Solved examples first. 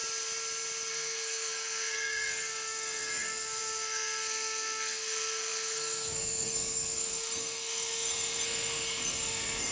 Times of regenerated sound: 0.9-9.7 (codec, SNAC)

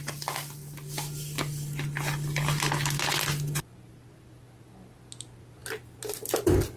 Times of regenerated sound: none

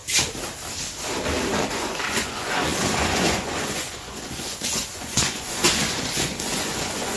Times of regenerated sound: 1.7-7.2 (vocoder, Vocos)

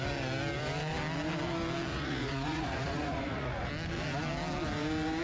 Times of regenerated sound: 1.9-3.7 (vocoder, Vocos)

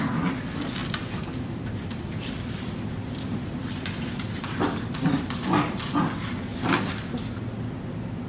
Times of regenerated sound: 0.8-5.8 (vocoder, BigVGAN v2)

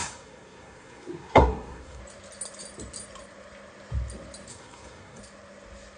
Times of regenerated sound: 0.0-2.0 (codec, SNAC); 4.5-5.2

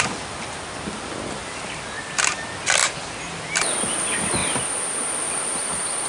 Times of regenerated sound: 1.4-2.2 (vocoder, BigVGAN v2); 2.8-3.7

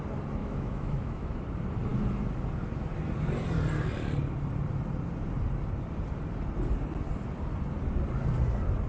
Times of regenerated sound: 0.4-1.3 (autoencoder, DAC-VAE)